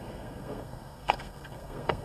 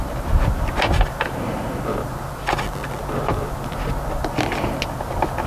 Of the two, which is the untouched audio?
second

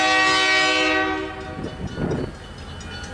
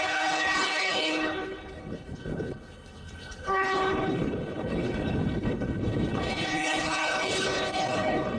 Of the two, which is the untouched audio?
first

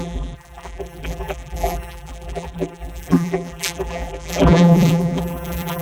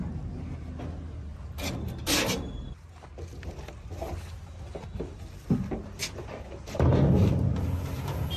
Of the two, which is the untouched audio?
second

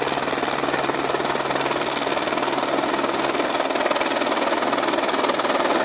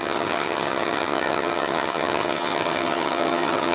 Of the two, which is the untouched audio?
first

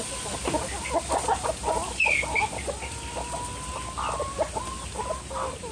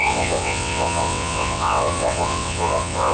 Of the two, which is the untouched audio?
first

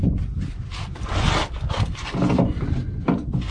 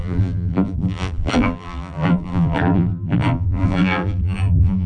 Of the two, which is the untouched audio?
first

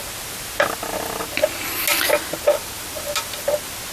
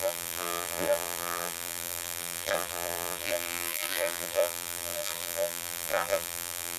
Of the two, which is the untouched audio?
first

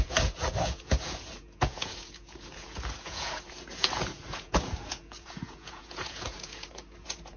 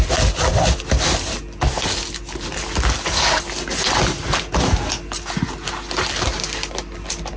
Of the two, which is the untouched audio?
second